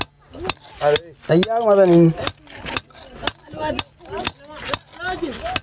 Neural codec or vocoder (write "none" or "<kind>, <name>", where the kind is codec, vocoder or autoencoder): none